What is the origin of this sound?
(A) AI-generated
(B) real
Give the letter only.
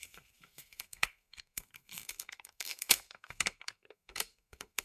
A